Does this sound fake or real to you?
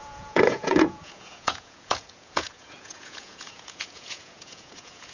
fake